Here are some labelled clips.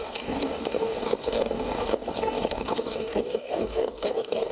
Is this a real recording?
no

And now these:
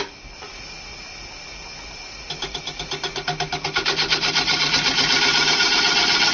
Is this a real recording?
yes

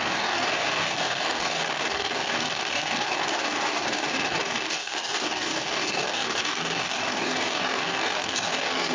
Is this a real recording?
no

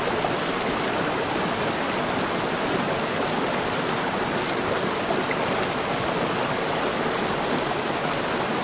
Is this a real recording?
yes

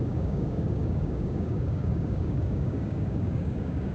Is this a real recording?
no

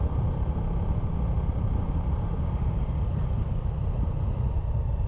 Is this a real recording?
yes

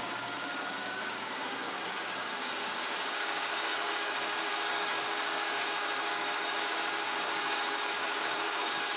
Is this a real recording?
no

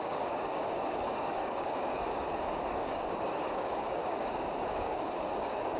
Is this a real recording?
no